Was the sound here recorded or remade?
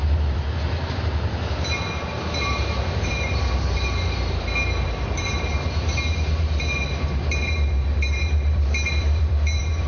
remade